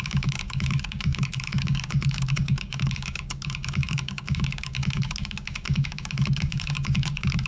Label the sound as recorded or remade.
remade